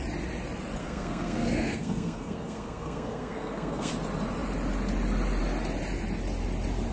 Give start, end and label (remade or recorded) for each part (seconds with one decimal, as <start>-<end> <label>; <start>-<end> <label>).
0.0-0.8 recorded; 0.8-3.9 remade; 3.9-6.9 recorded